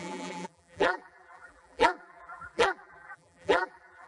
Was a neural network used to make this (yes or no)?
yes